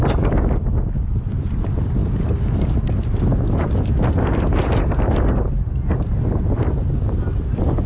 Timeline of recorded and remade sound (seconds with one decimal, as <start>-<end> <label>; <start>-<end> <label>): 0.0-7.9 recorded